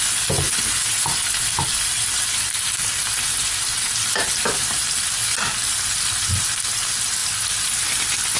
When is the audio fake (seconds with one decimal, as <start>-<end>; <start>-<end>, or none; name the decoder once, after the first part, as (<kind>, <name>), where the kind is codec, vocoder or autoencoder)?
none